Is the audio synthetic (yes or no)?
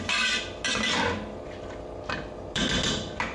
no